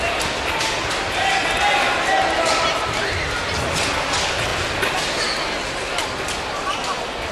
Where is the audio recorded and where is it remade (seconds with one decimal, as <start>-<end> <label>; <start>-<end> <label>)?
0.0-7.3 recorded